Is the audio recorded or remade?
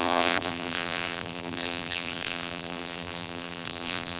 remade